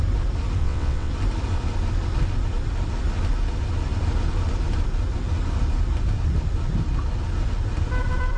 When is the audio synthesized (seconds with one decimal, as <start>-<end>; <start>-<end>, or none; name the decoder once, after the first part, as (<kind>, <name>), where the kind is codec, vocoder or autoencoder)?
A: 0.6-1.1 (vocoder, WaveNeXt)